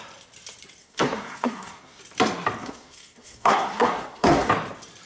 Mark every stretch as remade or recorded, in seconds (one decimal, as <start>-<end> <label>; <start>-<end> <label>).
0.0-0.8 recorded; 0.8-2.0 remade; 2.0-2.6 recorded; 2.6-4.5 remade; 4.5-5.1 recorded